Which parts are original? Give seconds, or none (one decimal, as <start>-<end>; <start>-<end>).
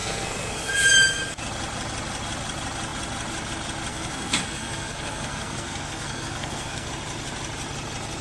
0.7-3.9; 6.9-8.2